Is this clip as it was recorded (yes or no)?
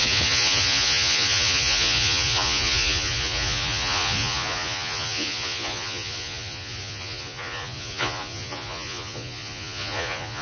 no